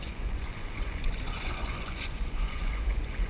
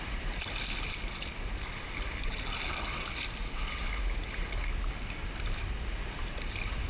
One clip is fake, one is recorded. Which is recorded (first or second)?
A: second